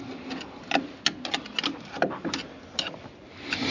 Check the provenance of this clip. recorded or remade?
recorded